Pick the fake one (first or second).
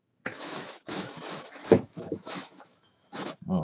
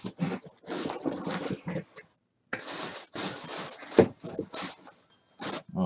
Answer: first